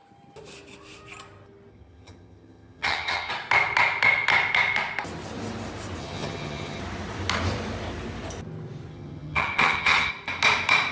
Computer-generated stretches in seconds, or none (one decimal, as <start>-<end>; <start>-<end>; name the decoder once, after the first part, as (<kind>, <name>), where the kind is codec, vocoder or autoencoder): 1.7-3.3 (vocoder, HiFi-GAN); 6.0-6.8; 8.9-10.1